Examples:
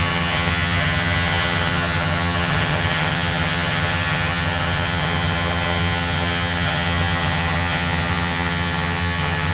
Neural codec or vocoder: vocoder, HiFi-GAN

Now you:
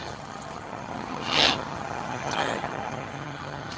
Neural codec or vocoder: vocoder, HiFi-GAN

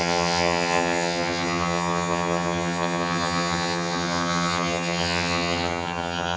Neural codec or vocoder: vocoder, HiFi-GAN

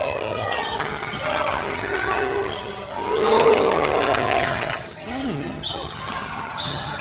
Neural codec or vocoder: vocoder, HiFi-GAN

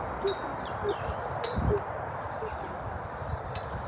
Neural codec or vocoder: none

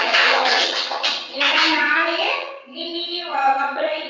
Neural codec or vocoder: vocoder, HiFi-GAN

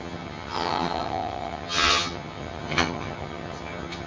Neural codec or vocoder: vocoder, HiFi-GAN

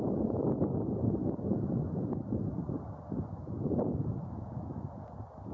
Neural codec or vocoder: none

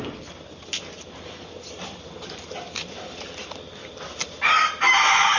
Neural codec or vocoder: none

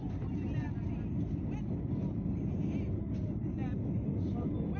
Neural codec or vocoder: none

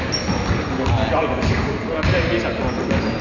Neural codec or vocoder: none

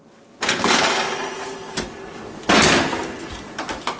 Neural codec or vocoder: none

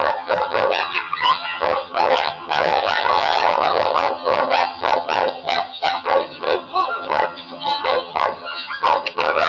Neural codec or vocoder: vocoder, HiFi-GAN